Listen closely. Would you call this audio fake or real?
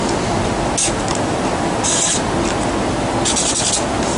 real